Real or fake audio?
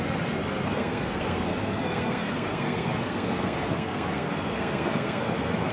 fake